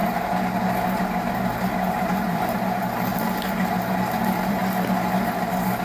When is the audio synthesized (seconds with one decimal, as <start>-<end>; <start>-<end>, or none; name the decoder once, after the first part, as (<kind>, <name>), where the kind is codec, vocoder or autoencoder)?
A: 1.6-4.6 (vocoder, BigVGAN v2)